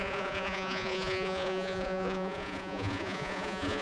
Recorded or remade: remade